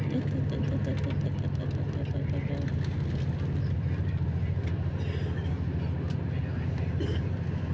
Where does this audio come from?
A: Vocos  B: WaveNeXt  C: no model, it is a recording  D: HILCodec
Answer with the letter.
C